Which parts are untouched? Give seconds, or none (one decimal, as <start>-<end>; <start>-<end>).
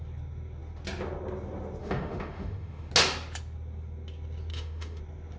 0.0-1.8; 2.9-4.5; 5.0-5.4